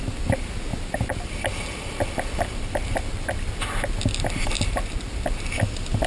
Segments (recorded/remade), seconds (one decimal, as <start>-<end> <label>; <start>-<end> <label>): 0.0-6.1 recorded